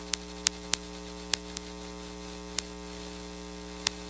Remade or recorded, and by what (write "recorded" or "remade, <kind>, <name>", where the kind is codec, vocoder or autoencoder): recorded